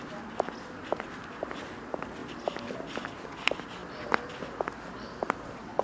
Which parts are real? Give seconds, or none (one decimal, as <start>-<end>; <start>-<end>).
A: 0.0-5.8